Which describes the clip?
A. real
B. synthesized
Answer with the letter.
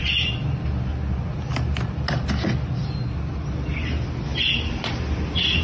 A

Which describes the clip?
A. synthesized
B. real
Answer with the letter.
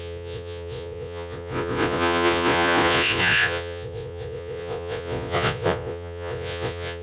A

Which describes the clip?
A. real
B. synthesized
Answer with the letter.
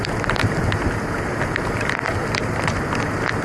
A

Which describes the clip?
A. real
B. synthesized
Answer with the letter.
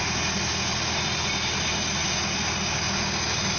A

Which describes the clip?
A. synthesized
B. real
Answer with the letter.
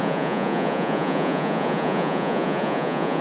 A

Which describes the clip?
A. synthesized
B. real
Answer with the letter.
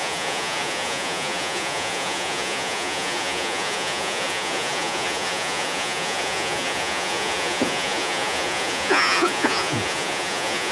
A